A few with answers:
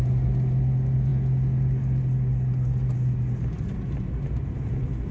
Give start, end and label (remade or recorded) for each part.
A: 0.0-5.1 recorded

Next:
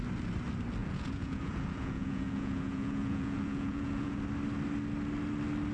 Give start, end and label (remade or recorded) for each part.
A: 0.0-0.8 recorded; 0.8-4.2 remade; 4.2-5.7 recorded